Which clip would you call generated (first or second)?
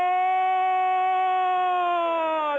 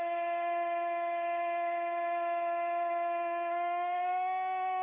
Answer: second